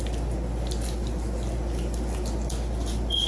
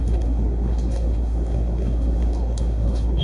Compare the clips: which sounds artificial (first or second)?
second